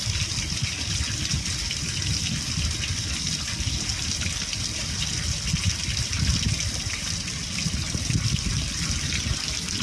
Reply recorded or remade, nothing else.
recorded